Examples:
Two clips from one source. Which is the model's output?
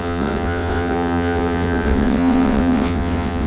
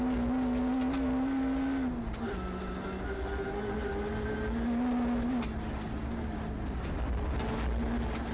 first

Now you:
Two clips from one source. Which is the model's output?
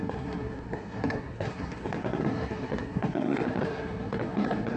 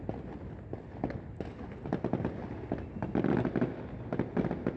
first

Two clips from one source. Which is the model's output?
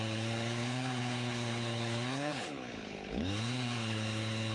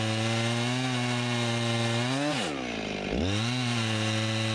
first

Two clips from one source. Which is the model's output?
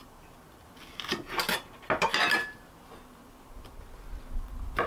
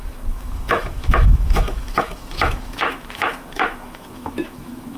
second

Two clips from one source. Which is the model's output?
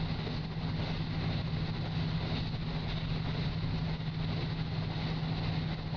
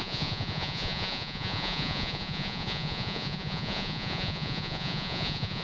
second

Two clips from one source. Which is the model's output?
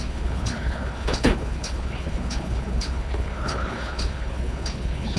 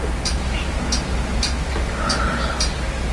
first